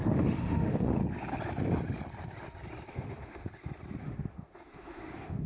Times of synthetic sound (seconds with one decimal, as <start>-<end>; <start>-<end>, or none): 0.0-1.0; 2.9-3.5; 4.0-5.5